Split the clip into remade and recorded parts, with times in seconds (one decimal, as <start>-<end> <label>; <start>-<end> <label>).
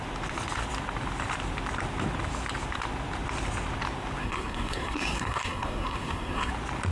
0.0-4.2 recorded; 4.2-6.5 remade; 6.5-6.9 recorded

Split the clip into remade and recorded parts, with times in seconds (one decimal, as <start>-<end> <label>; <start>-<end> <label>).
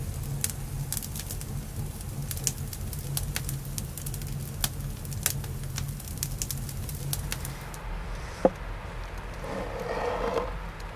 0.0-11.0 recorded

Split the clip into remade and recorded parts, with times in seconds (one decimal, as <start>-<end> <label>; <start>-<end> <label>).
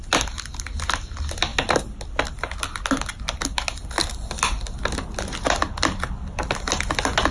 0.0-7.3 recorded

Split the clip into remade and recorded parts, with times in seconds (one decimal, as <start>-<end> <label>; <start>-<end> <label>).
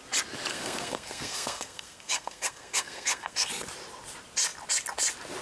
0.0-0.5 recorded; 0.5-3.5 remade; 3.5-5.4 recorded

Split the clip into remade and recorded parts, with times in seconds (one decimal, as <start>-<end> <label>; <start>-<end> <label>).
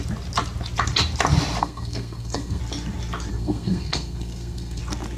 0.0-1.6 recorded; 1.6-2.6 remade; 2.6-3.3 recorded; 3.3-4.8 remade; 4.8-5.2 recorded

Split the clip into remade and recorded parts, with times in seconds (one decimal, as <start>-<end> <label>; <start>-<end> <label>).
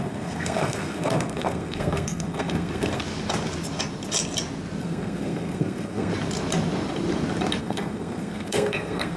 0.0-3.0 remade; 3.0-4.8 recorded; 4.8-6.1 remade; 6.1-7.6 recorded; 7.6-9.2 remade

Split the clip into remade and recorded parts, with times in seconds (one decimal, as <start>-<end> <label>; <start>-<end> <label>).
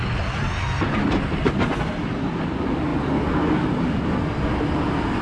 0.0-5.2 recorded